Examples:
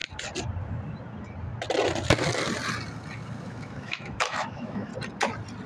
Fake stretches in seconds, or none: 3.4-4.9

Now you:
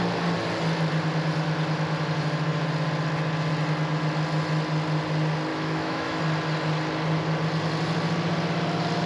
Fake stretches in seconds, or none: 5.5-6.2

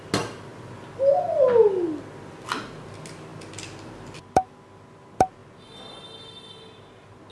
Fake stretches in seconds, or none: none

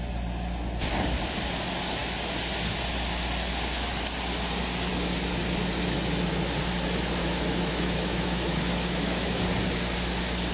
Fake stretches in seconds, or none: 7.2-9.4

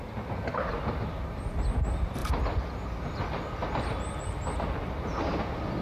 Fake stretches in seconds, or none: none